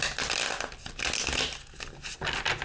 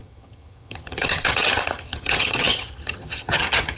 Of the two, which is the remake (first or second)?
second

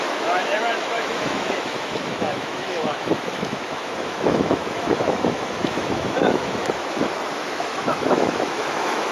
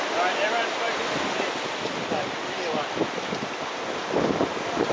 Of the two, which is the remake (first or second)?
first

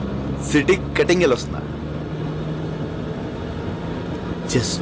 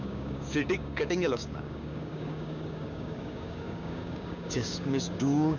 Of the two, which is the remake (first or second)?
second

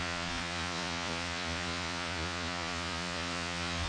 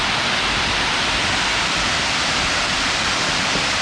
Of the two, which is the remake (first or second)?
first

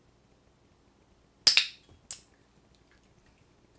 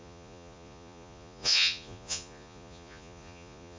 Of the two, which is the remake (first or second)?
second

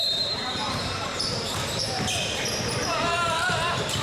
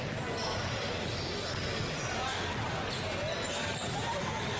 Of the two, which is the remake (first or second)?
first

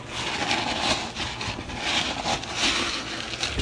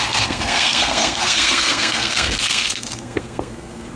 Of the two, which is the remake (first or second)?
second